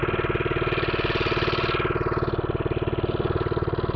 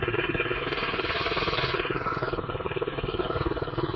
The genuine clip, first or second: first